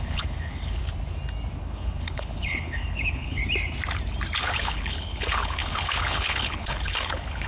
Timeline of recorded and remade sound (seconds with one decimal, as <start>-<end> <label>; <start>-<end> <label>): 0.0-0.8 remade; 0.8-1.6 recorded; 1.6-3.4 remade; 3.4-4.4 recorded; 4.4-7.5 remade